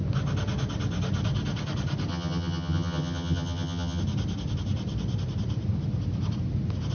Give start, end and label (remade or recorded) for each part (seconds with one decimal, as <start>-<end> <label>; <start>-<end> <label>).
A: 0.0-2.1 recorded; 2.1-4.0 remade; 4.0-6.9 recorded